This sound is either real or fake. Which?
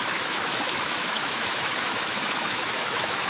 fake